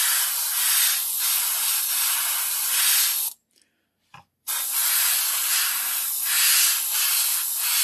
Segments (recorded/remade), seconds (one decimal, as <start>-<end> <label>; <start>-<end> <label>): 0.0-7.8 recorded